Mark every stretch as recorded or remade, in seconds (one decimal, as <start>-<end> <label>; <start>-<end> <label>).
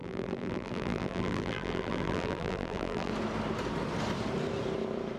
0.0-3.1 remade; 3.1-5.2 recorded